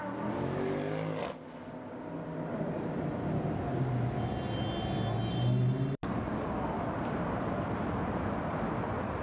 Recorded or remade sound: recorded